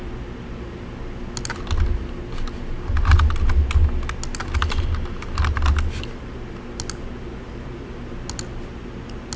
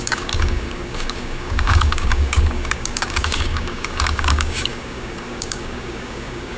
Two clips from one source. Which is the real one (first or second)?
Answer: first